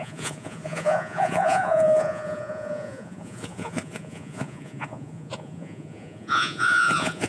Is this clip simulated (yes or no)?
yes